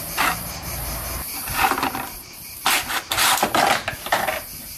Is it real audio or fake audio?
fake